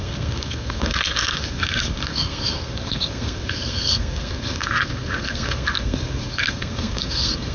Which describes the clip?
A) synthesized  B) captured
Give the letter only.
A